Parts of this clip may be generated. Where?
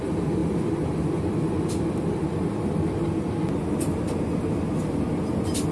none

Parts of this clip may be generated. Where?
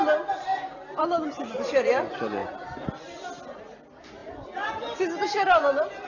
0.5-1.9; 4.2-4.7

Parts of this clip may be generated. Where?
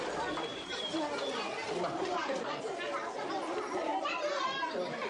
0.5-1.0; 3.8-4.4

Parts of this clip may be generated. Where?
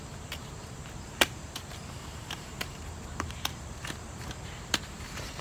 0.0-5.4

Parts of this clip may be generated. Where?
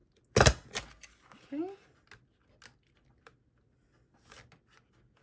none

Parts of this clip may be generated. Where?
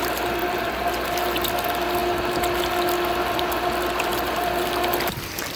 0.4-1.1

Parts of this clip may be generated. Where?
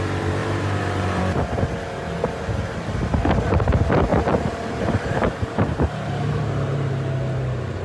0.4-1.2; 4.1-6.9